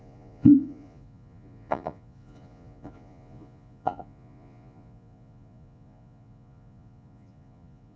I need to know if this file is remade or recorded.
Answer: remade